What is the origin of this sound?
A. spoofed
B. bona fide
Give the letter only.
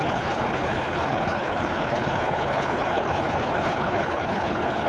A